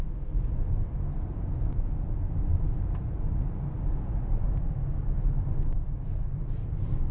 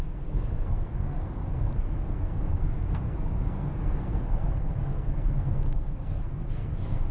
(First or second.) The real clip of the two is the first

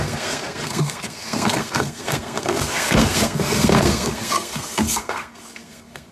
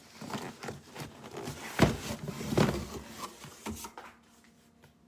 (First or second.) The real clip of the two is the second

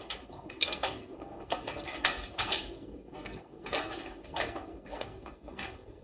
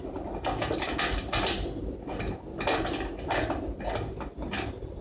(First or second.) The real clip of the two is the second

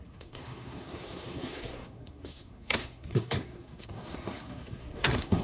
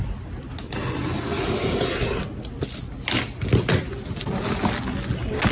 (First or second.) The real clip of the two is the second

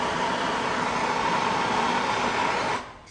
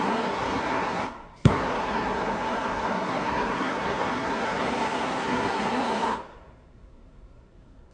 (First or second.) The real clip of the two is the first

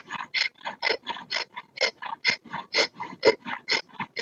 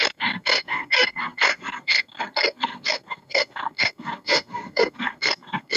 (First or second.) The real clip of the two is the first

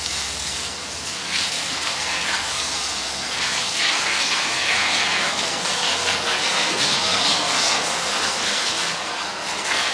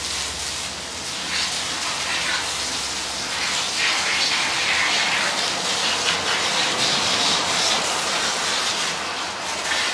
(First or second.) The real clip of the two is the second